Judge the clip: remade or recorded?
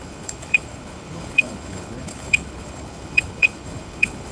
remade